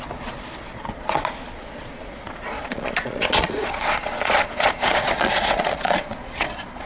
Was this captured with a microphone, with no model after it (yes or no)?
no